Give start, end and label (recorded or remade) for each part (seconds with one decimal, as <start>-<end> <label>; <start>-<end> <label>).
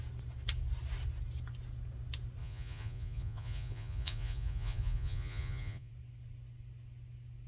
0.0-2.4 recorded; 2.4-5.9 remade; 5.9-7.5 recorded